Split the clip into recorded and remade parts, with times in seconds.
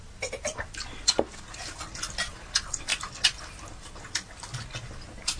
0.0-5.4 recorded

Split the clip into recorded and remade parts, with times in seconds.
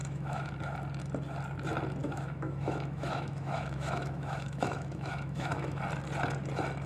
0.0-0.5 remade; 0.5-2.0 recorded; 2.0-5.8 remade; 5.8-6.9 recorded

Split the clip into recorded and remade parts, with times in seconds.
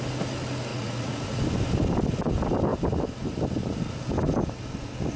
0.0-0.7 recorded; 0.7-1.4 remade; 1.4-5.2 recorded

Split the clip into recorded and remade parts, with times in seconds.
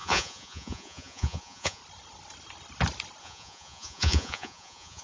0.0-1.8 remade; 1.8-3.2 recorded; 3.2-5.0 remade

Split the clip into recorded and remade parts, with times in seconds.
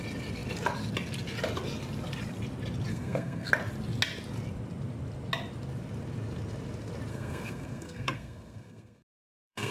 0.0-2.9 recorded; 2.9-3.5 remade; 3.5-7.1 recorded; 7.1-9.7 remade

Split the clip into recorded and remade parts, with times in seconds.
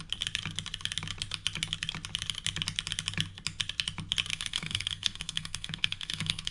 0.0-4.3 recorded; 4.3-6.5 remade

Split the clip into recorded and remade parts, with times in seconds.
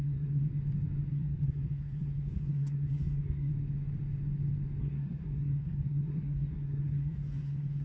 0.0-0.5 remade; 0.5-1.1 recorded; 1.1-3.5 remade; 3.5-4.8 recorded; 4.8-7.8 remade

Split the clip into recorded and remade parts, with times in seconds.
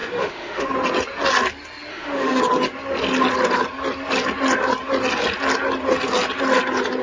0.0-0.7 remade; 0.7-1.9 recorded; 1.9-2.4 remade; 2.4-7.0 recorded